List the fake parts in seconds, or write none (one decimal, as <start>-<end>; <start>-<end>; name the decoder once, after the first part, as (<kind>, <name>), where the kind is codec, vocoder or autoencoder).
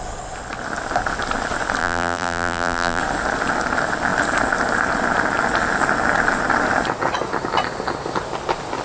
1.8-3.0 (vocoder, BigVGAN v2)